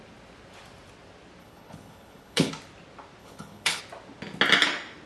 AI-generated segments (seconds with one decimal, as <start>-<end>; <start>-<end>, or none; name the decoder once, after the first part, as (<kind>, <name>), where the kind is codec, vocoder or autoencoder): 1.4-2.5 (codec, HILCodec); 3.2-3.8